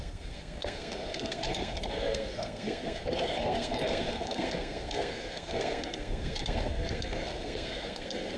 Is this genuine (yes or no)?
no